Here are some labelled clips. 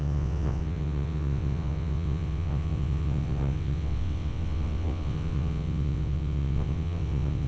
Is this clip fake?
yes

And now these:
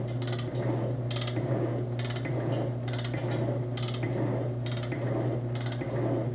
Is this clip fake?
no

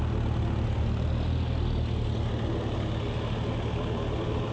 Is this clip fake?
no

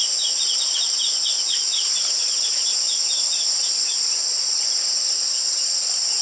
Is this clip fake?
no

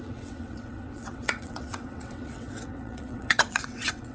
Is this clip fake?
yes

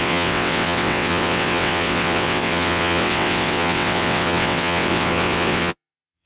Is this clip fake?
yes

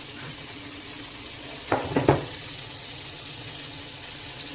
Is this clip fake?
yes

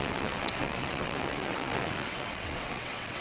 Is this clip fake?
yes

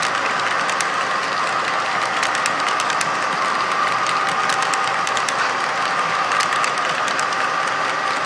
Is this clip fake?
no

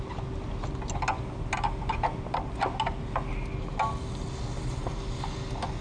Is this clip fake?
no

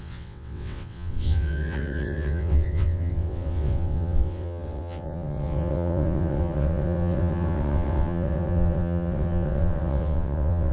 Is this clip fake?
yes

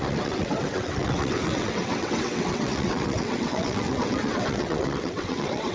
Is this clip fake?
yes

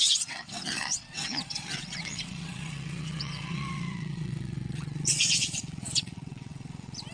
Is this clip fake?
yes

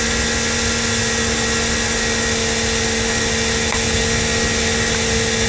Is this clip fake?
no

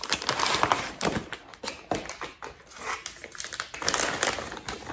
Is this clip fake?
no